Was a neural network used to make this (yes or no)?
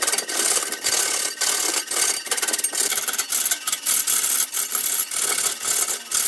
no